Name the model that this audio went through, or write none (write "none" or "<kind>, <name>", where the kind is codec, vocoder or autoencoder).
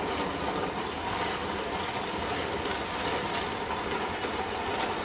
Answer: none